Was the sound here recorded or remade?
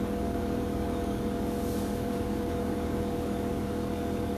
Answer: remade